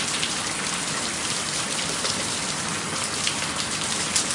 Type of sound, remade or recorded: recorded